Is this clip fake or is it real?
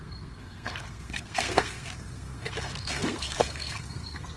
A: fake